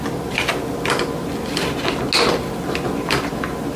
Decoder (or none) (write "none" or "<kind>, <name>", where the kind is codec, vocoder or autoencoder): none